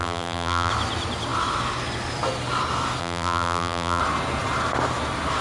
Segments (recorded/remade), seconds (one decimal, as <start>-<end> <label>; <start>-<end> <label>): 0.0-0.7 remade; 0.7-3.0 recorded; 3.0-4.0 remade; 4.0-5.4 recorded